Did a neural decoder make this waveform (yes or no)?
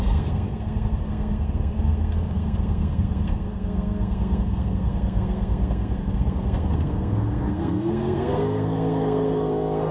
yes